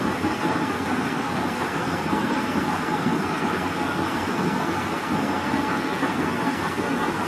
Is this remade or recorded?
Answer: remade